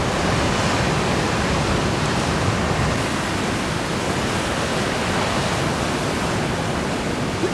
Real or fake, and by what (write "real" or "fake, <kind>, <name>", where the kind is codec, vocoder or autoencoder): real